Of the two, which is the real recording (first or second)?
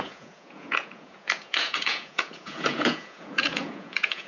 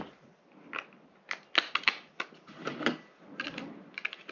second